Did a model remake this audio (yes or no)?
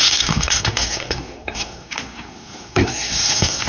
yes